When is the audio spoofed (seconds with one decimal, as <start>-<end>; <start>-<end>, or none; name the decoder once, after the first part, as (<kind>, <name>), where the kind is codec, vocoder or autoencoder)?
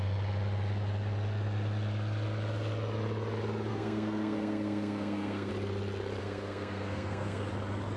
3.7-5.5 (codec, SNAC); 6.2-7.5